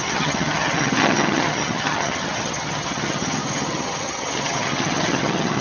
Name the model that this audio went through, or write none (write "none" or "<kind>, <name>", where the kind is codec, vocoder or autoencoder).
vocoder, HiFi-GAN